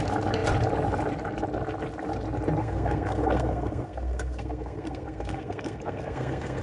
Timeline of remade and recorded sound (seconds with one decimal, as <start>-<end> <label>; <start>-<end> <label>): 0.0-2.6 recorded; 2.6-6.6 remade